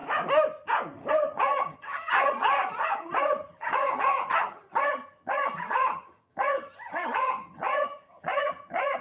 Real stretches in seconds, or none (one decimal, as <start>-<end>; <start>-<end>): 0.0-1.1